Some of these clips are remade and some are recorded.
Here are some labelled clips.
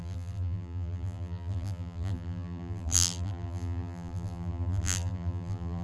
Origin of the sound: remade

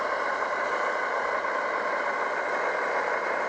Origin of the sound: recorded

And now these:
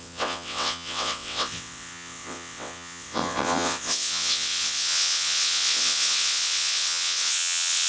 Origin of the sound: remade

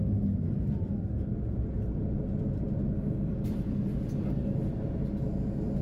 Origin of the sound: recorded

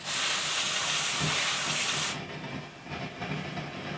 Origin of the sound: recorded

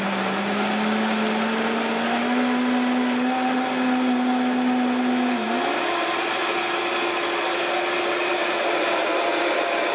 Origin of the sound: recorded